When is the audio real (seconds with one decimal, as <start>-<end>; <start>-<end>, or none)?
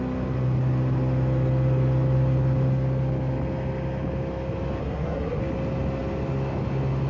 0.0-4.8; 5.4-7.1